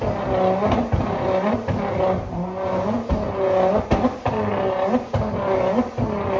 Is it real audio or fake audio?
real